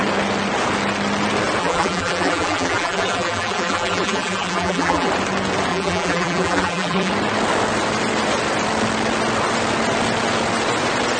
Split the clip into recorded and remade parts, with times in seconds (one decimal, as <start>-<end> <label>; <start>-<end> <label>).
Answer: 0.0-1.6 recorded; 1.6-5.1 remade; 5.1-5.7 recorded; 5.7-7.1 remade; 7.1-11.2 recorded